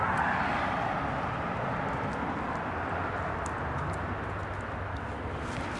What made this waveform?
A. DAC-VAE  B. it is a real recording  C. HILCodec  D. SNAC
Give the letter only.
B